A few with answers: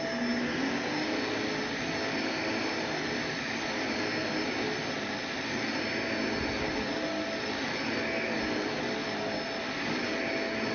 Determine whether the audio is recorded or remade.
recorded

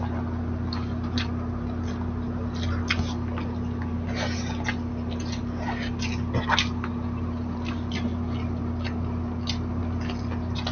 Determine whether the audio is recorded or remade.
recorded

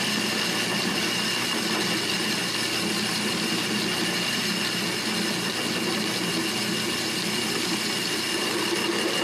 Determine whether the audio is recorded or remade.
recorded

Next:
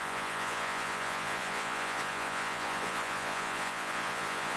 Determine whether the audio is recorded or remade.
remade